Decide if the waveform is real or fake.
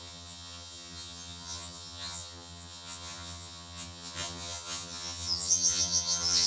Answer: fake